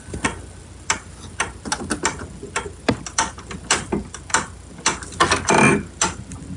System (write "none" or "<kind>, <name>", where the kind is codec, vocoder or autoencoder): none